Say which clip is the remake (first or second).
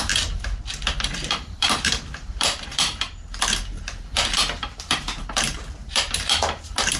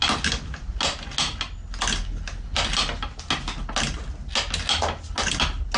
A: first